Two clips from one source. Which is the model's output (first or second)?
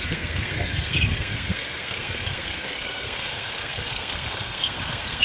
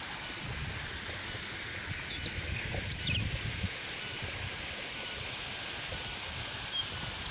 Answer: first